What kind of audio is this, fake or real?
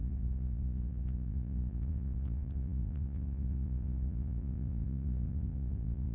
fake